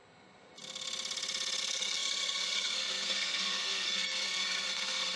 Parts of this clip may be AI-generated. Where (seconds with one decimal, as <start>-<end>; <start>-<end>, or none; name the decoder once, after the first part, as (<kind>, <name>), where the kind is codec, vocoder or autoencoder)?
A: 1.6-5.2 (codec, SNAC)